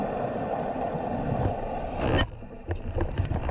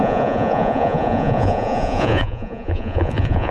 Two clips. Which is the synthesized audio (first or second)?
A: second